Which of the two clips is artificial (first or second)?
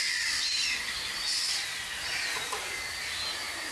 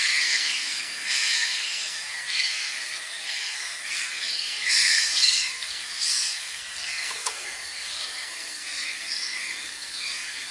second